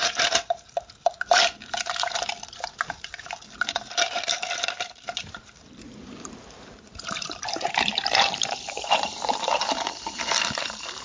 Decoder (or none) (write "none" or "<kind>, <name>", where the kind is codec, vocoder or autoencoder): vocoder, BigVGAN v2